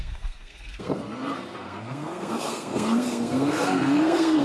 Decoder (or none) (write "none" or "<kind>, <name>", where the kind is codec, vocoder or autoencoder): codec, SNAC